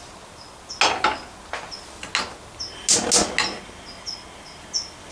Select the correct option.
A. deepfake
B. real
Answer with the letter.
B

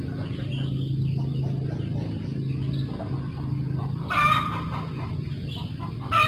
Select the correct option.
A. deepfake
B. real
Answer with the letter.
B